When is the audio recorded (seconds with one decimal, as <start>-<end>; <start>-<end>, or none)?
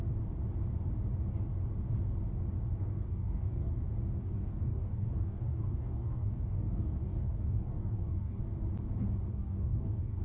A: 0.0-2.8; 3.7-4.2; 8.4-9.3